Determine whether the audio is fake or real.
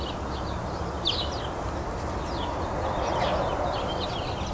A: real